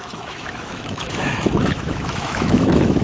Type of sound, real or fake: fake